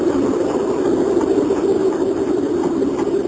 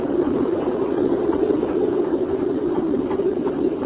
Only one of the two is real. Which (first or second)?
first